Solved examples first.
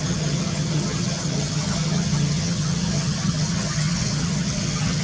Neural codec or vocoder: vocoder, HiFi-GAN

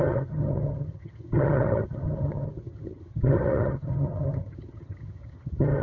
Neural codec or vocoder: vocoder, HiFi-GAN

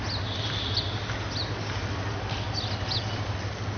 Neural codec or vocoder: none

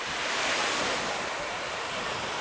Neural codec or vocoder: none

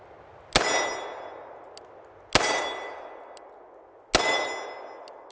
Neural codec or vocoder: none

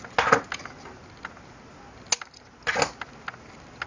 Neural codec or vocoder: none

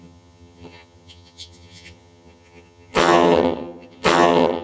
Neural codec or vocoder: vocoder, HiFi-GAN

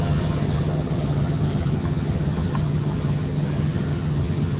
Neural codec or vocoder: vocoder, HiFi-GAN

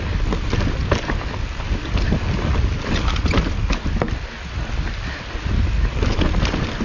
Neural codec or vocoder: none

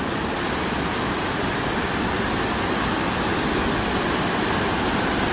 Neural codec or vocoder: none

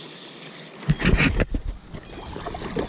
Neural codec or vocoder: none